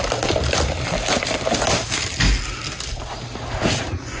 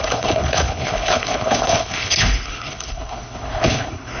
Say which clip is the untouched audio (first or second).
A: first